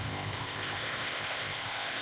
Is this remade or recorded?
remade